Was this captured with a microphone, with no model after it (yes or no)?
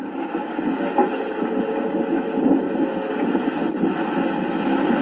yes